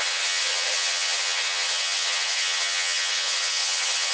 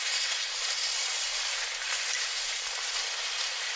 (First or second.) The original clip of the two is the second